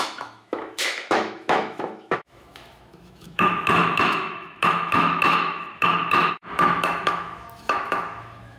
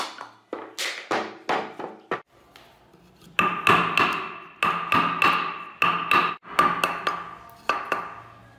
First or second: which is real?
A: second